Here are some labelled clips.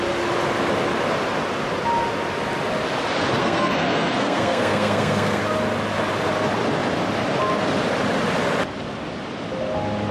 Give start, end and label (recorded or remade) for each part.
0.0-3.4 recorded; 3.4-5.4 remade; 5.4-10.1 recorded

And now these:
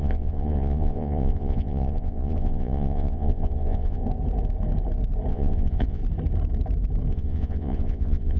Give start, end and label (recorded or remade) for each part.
0.0-4.0 remade; 4.0-5.3 recorded; 5.3-6.0 remade; 6.0-7.1 recorded; 7.1-8.4 remade